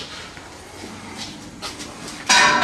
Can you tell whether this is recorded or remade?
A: recorded